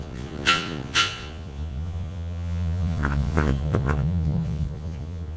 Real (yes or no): no